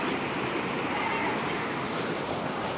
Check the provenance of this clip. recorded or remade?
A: recorded